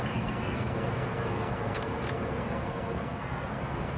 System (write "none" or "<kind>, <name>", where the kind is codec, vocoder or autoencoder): codec, SNAC